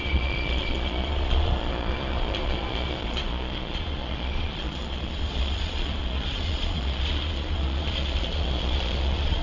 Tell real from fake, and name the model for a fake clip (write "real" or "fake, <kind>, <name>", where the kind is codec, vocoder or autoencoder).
fake, vocoder, Vocos